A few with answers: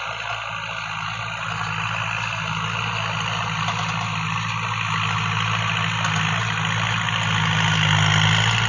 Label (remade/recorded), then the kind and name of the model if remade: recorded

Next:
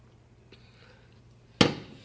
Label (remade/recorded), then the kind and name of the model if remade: recorded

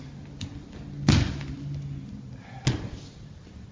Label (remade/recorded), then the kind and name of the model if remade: recorded